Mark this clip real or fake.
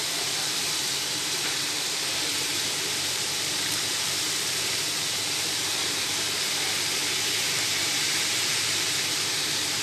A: fake